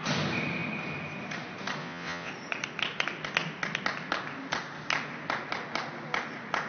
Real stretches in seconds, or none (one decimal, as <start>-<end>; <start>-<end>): 0.0-1.8; 2.3-6.7